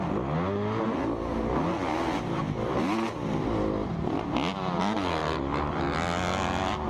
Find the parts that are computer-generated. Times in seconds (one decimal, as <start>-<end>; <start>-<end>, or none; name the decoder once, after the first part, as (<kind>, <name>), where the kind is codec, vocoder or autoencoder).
5.2-5.8 (vocoder, BigVGAN v2)